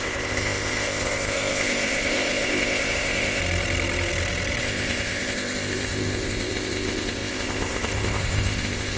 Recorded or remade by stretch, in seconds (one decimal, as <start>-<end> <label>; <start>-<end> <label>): 0.0-3.4 remade; 3.4-4.6 recorded; 4.6-9.0 remade